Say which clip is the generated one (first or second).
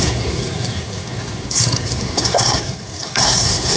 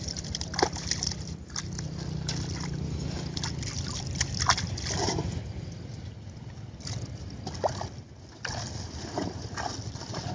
first